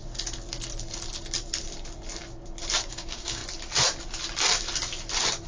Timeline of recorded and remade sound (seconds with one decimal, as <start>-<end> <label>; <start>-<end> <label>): 0.0-2.9 recorded; 2.9-3.4 remade; 3.4-5.5 recorded